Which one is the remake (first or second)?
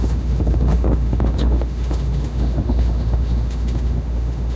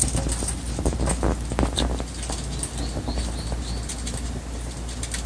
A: first